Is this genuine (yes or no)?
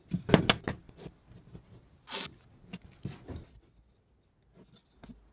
yes